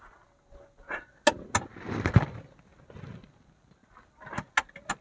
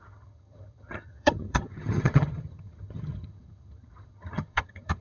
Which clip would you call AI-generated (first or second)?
second